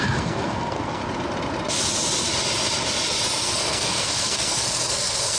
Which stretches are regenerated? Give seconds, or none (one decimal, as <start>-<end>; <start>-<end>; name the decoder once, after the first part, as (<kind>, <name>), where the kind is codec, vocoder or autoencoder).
0.0-1.0 (codec, SNAC); 3.4-5.4